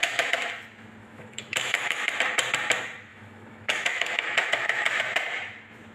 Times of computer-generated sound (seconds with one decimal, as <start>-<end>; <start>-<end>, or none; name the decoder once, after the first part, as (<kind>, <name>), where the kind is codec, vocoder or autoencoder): 0.0-0.5 (autoencoder, DAC-VAE); 1.0-2.1; 3.1-5.0